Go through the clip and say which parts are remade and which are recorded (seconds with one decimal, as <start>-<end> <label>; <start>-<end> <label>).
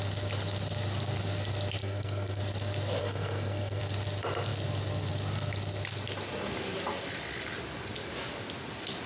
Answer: 0.0-1.8 recorded; 1.8-2.4 remade; 2.4-3.0 recorded; 3.0-3.8 remade; 3.8-9.1 recorded